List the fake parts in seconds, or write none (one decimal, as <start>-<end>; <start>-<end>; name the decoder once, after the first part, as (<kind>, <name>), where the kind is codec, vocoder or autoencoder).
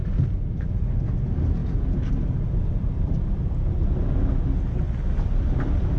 none